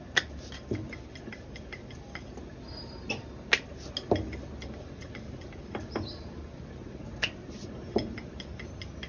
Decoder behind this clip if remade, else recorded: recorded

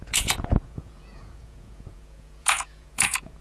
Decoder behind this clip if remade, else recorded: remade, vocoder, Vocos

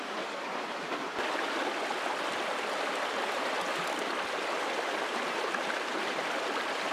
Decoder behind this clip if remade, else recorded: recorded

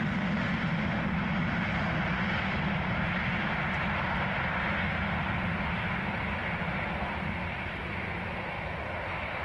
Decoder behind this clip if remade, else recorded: recorded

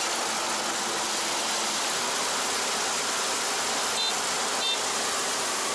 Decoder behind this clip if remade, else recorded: recorded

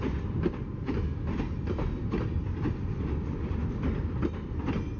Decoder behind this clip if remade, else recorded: recorded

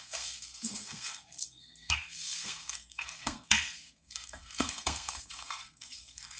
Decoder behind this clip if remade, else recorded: remade, codec, SNAC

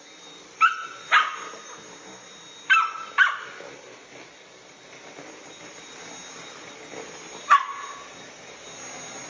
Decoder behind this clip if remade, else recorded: recorded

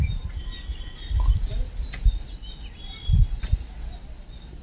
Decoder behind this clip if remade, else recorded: recorded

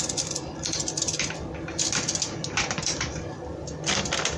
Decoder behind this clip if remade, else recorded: recorded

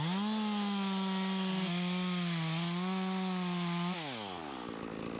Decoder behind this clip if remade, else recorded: recorded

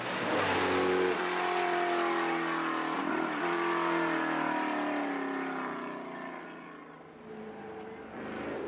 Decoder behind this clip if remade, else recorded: recorded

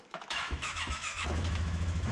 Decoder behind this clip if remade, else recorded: remade, autoencoder, DAC-VAE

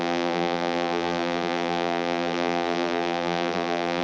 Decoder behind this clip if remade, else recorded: remade, vocoder, BigVGAN v2